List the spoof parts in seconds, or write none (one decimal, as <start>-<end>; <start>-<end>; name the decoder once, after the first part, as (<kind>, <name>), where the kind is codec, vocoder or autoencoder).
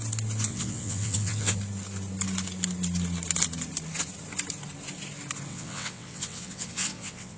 0.5-1.6 (vocoder, WaveNeXt); 5.5-7.4